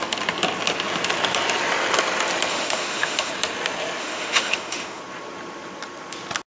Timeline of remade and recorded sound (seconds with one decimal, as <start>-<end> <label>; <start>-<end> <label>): 0.0-2.5 recorded; 2.5-3.3 remade; 3.3-4.0 recorded; 4.0-5.0 remade; 5.0-6.5 recorded